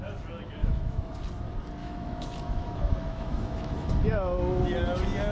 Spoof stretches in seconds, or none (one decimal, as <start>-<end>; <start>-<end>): 0.6-1.1; 1.8-3.9